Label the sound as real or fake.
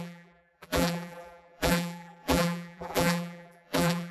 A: fake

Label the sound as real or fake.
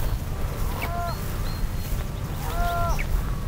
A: real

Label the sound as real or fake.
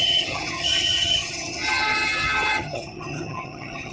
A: fake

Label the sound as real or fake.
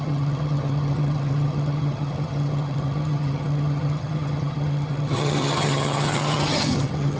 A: fake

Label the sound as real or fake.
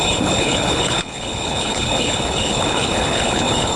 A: fake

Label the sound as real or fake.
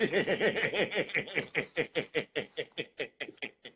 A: real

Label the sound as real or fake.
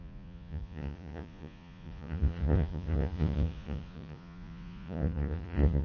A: fake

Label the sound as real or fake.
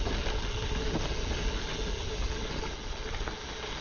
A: real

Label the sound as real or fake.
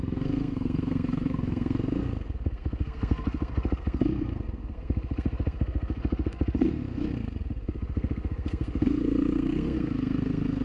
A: fake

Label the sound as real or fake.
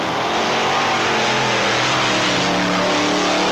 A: real